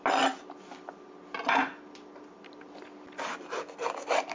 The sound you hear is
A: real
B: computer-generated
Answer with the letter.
A